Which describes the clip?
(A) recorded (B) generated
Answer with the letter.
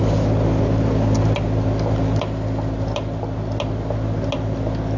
A